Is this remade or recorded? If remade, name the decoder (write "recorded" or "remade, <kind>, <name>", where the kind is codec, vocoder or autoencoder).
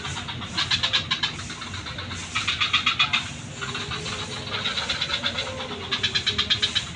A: recorded